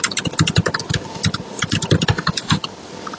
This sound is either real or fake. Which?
real